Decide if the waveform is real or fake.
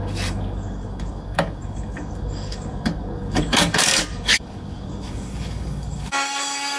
fake